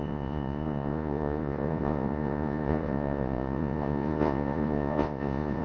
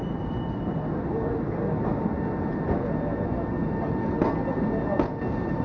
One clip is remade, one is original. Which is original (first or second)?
second